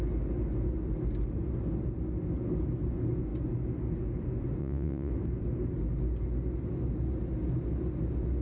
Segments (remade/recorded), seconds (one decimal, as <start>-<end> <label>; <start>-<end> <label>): 0.0-4.6 recorded; 4.6-5.1 remade; 5.1-8.4 recorded